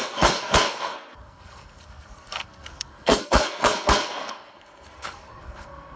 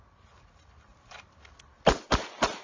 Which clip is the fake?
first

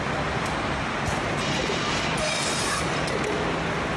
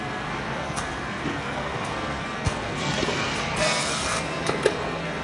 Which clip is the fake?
second